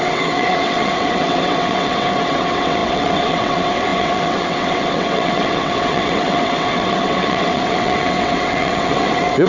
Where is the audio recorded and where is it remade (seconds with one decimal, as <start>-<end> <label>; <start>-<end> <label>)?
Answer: 0.0-9.5 remade